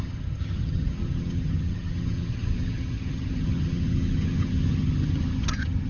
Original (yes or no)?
no